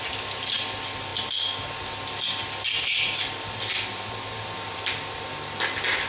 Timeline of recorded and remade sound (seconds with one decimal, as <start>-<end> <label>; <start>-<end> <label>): 0.0-6.1 recorded